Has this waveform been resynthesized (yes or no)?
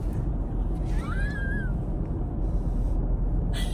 no